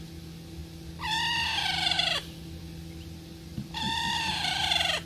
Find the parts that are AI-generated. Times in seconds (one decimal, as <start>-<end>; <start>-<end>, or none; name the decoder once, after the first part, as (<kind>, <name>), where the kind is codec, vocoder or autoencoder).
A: none